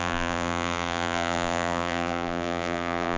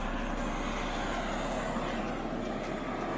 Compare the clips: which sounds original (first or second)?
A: second